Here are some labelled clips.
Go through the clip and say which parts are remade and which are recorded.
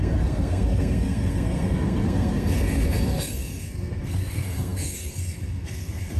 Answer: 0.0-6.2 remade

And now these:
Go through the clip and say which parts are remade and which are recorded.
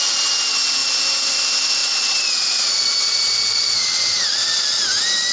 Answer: 0.0-1.8 recorded; 1.8-2.8 remade; 2.8-3.5 recorded; 3.5-4.5 remade; 4.5-5.3 recorded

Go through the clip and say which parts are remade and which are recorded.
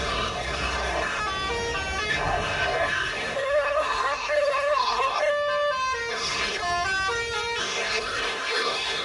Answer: 0.0-1.2 remade; 1.2-2.1 recorded; 2.1-5.3 remade; 5.3-6.1 recorded; 6.1-6.6 remade; 6.6-7.6 recorded; 7.6-9.0 remade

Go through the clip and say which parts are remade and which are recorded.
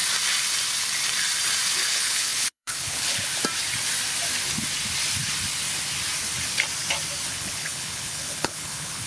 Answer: 0.0-1.9 recorded; 1.9-3.3 remade; 3.3-7.3 recorded; 7.3-9.1 remade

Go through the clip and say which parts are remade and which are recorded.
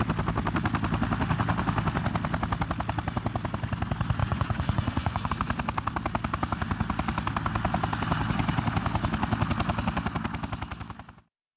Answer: 0.0-4.2 recorded; 4.2-5.3 remade; 5.3-11.6 recorded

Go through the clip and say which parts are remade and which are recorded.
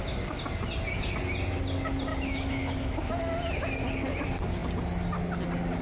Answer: 0.0-2.1 recorded; 2.1-3.1 remade; 3.1-5.8 recorded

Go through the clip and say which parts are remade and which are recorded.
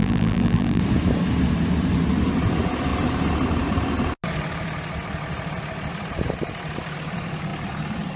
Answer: 0.0-0.8 remade; 0.8-8.2 recorded